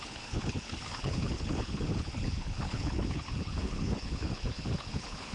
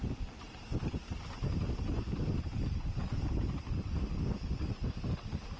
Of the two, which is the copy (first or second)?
first